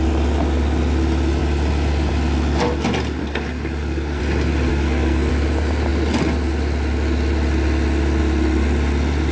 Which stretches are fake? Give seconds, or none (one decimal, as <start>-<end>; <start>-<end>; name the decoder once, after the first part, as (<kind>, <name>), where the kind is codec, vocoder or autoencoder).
3.2-4.2 (codec, SNAC); 4.7-5.3